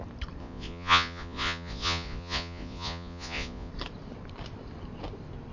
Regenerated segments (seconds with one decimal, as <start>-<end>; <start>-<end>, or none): 0.4-3.7